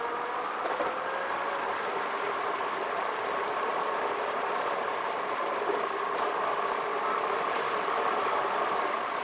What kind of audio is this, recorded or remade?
recorded